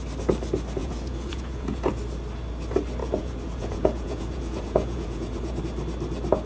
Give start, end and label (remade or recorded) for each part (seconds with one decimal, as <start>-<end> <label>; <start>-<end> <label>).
0.0-0.8 recorded; 0.8-1.9 remade; 1.9-3.0 recorded; 3.0-5.6 remade; 5.6-6.5 recorded